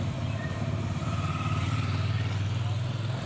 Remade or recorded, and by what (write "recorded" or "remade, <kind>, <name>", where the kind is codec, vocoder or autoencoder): recorded